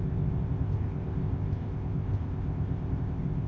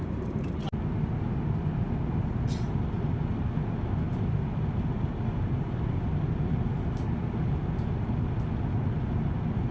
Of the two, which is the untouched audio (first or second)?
second